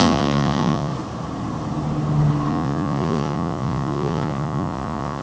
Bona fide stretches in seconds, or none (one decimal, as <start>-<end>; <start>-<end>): 0.9-2.5